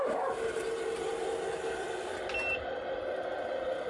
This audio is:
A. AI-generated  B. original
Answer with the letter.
B